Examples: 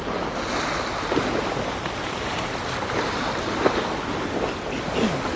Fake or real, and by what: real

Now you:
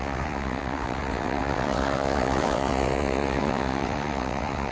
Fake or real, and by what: fake, vocoder, WaveNeXt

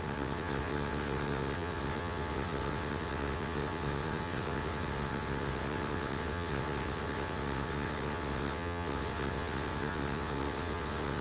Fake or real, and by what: fake, vocoder, WaveNeXt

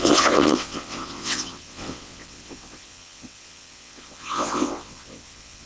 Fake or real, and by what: fake, vocoder, WaveNeXt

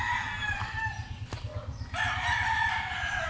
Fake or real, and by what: real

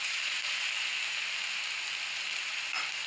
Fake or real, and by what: real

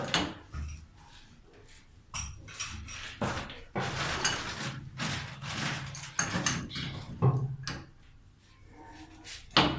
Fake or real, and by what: real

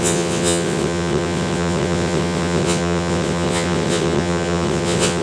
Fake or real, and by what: fake, vocoder, WaveNeXt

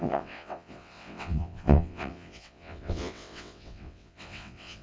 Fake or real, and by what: fake, vocoder, WaveNeXt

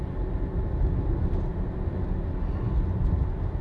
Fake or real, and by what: real